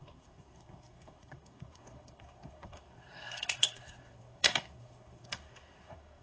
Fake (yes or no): yes